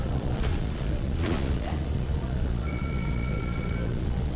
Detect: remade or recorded remade